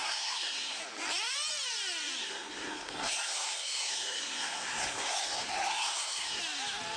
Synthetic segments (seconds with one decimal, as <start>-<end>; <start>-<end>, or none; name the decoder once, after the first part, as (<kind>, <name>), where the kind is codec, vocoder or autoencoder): 0.0-0.8 (codec, SNAC); 2.2-6.4

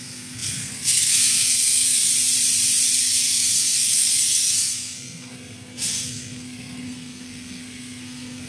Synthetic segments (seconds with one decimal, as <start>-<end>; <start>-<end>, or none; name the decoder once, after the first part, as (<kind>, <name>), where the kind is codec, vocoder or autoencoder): 0.0-2.1 (codec, SNAC); 3.0-8.5

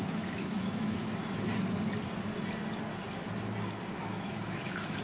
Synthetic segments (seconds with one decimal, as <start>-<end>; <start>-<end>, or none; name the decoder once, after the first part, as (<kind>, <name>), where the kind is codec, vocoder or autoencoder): 0.0-1.0 (autoencoder, DAC-VAE); 4.0-5.0

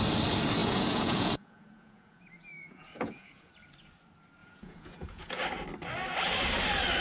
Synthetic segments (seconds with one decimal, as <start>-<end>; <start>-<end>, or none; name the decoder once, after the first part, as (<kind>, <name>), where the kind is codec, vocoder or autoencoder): 0.6-3.5 (vocoder, Vocos); 4.4-5.4

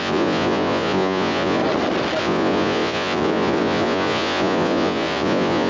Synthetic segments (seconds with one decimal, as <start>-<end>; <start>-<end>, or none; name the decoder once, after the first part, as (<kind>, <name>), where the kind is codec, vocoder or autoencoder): 0.0-1.6 (vocoder, Vocos); 2.2-5.7

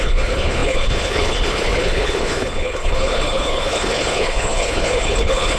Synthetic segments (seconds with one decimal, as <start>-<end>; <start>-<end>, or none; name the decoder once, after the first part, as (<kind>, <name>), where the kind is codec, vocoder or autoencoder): 0.0-5.6 (codec, HILCodec)